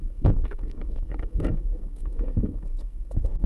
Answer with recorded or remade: remade